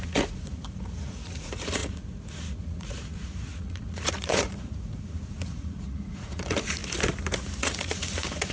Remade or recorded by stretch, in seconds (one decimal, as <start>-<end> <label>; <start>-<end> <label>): 0.0-6.8 remade; 6.8-7.6 recorded; 7.6-8.5 remade